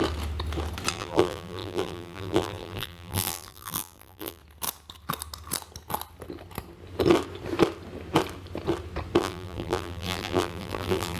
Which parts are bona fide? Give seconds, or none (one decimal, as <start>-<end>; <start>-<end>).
0.0-0.9; 4.4-9.2